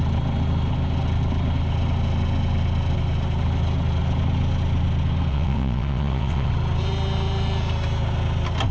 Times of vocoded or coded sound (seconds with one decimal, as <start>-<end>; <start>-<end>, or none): 5.3-6.5